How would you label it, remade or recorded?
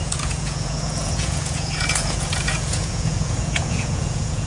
remade